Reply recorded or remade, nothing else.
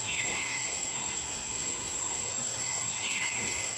remade